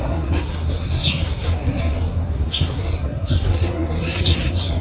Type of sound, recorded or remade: remade